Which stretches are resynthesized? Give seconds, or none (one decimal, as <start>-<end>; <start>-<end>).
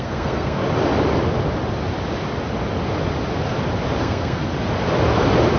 0.0-0.6; 4.0-4.4